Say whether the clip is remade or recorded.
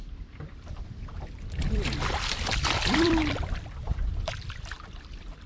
remade